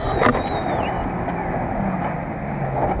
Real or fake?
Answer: real